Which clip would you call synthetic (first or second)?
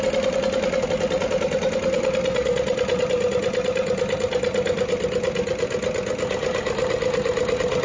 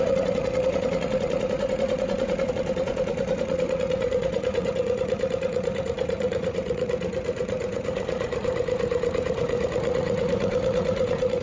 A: second